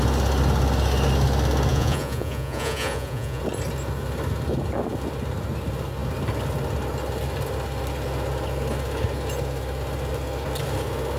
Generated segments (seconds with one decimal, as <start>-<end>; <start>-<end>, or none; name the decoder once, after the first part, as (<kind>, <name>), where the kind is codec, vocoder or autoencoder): 1.7-3.4 (vocoder, Vocos)